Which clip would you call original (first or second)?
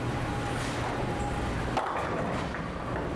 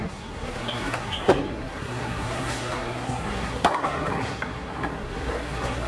first